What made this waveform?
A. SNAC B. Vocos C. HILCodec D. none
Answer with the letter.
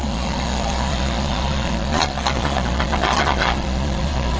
B